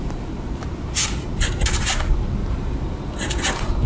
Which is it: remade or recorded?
recorded